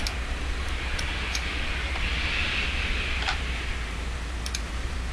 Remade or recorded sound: remade